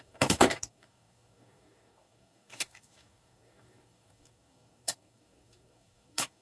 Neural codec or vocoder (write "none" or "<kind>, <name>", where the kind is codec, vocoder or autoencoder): codec, DAC